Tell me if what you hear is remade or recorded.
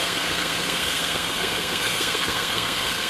remade